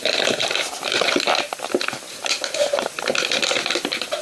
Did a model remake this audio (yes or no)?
yes